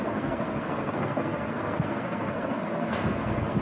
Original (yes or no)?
no